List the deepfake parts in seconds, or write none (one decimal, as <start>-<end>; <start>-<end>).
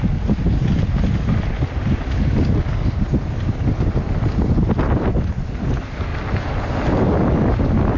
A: none